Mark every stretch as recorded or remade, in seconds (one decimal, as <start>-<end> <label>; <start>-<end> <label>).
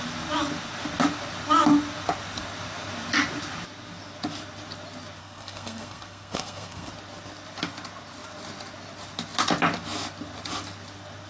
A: 0.0-5.2 recorded; 5.2-6.9 remade; 6.9-11.3 recorded